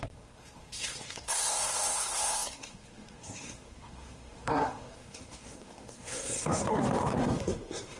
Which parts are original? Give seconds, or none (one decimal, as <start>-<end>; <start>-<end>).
none